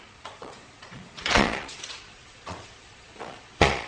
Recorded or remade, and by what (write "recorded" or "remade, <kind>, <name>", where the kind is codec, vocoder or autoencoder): remade, vocoder, Vocos